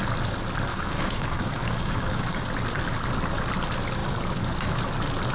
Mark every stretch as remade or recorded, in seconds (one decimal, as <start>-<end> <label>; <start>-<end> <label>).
0.0-0.7 recorded; 0.7-2.5 remade; 2.5-5.3 recorded